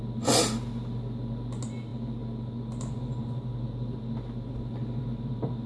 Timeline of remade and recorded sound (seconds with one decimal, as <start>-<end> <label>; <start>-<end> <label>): 0.0-5.7 recorded